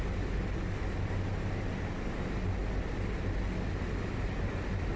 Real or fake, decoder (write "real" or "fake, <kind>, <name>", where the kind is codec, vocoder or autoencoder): real